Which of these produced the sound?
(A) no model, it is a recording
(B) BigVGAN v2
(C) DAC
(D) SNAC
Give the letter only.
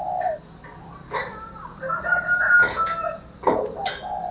A